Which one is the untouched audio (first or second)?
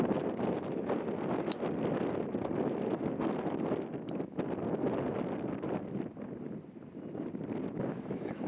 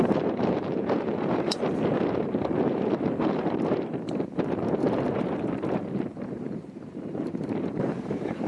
first